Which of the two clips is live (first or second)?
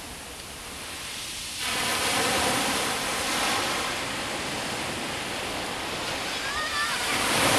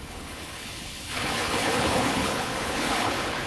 first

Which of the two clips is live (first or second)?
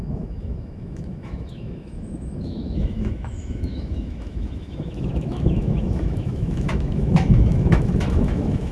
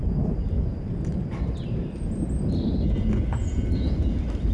second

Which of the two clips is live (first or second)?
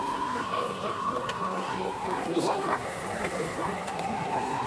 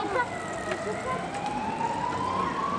second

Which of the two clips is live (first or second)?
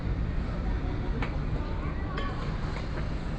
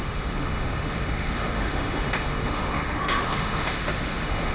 first